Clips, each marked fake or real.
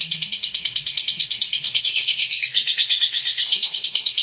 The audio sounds fake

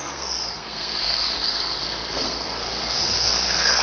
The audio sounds fake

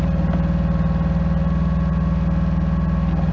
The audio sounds real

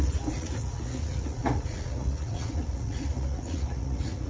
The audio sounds fake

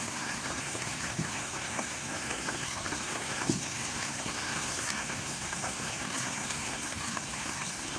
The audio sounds fake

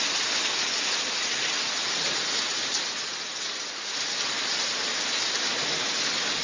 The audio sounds real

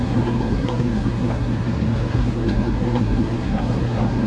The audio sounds fake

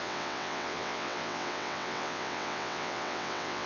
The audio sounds fake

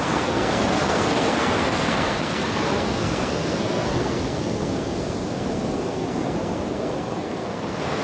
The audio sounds fake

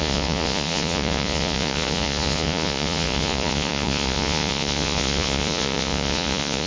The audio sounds fake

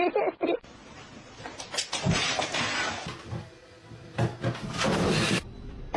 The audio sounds real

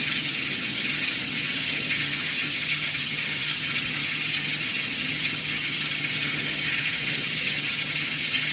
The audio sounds fake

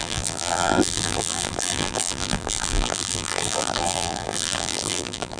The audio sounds fake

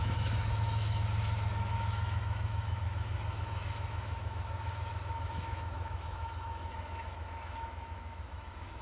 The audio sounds fake